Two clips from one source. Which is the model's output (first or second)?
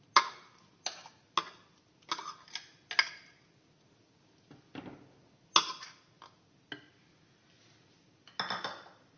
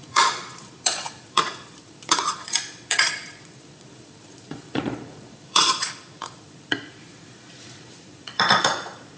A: second